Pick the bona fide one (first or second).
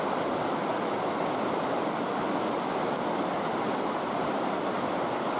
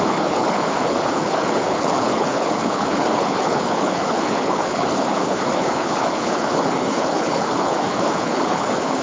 first